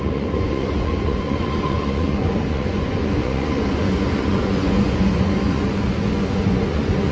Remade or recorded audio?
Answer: remade